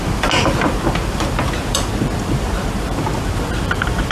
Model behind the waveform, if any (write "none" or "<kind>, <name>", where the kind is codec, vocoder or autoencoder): vocoder, BigVGAN v2